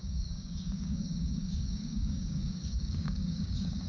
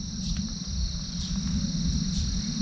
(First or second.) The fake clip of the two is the first